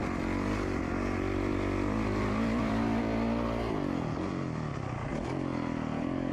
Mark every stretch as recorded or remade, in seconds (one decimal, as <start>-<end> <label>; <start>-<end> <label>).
0.0-6.3 recorded